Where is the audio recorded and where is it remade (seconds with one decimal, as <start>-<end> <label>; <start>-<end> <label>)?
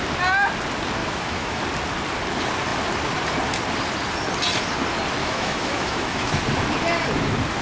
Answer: 0.0-1.0 recorded; 1.0-1.6 remade; 1.6-5.2 recorded; 5.2-6.4 remade; 6.4-7.6 recorded